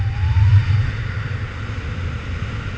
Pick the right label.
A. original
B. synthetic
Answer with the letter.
A